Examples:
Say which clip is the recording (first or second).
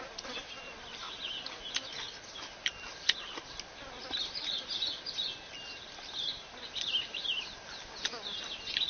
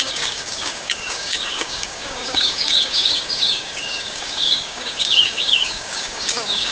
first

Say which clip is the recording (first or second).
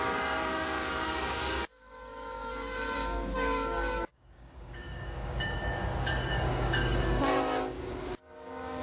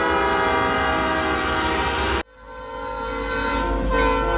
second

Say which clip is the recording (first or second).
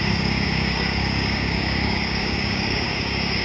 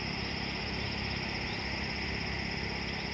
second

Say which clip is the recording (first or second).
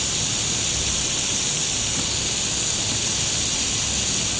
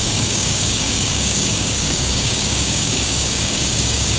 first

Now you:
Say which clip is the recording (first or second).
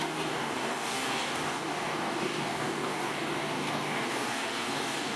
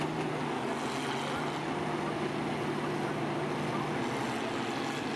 second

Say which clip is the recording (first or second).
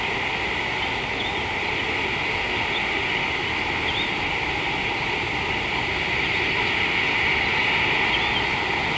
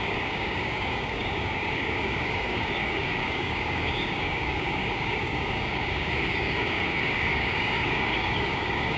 first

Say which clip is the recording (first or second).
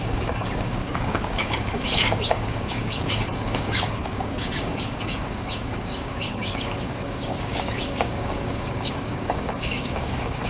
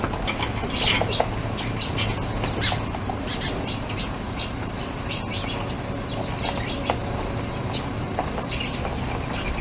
second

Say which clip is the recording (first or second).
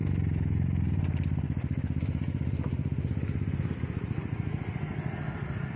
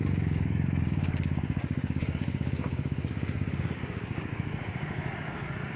first